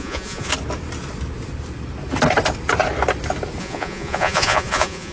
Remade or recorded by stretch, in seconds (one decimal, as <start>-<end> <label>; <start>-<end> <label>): 0.0-0.5 remade; 0.5-3.6 recorded; 3.6-5.1 remade